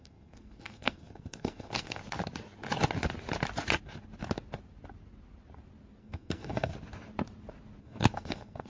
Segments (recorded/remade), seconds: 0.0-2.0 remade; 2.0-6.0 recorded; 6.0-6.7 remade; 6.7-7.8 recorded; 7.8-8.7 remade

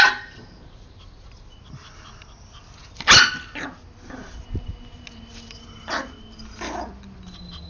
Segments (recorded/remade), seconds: 0.0-7.7 recorded

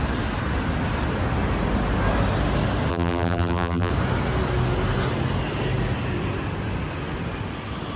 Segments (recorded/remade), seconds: 0.0-2.9 recorded; 2.9-3.9 remade; 3.9-8.0 recorded

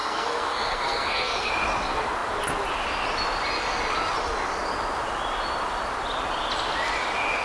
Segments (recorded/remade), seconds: 0.0-1.5 remade; 1.5-7.4 recorded

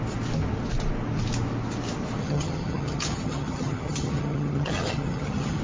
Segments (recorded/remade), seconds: 0.0-2.2 recorded; 2.2-5.6 remade

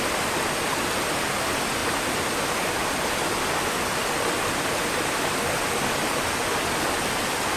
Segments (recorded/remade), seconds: 0.0-7.6 recorded

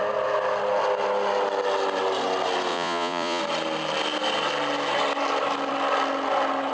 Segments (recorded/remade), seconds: 0.0-2.7 recorded; 2.7-3.4 remade; 3.4-6.7 recorded